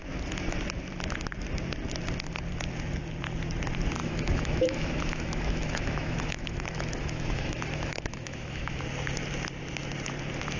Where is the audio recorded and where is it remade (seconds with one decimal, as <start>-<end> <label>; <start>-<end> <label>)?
0.0-4.0 recorded; 4.0-8.8 remade; 8.8-10.6 recorded